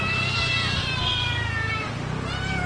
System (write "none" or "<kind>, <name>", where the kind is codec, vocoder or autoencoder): none